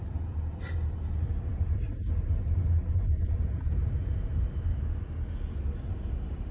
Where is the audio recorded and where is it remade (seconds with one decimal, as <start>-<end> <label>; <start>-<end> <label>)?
0.0-1.5 recorded; 1.5-4.5 remade; 4.5-6.5 recorded